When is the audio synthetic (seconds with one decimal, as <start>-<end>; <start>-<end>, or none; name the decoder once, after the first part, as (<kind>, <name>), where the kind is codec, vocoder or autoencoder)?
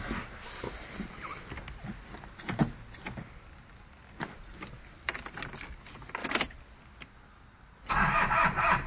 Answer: none